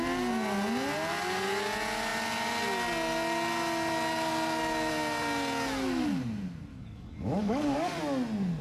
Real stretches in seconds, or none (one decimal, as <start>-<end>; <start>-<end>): 0.0-6.7; 8.0-8.6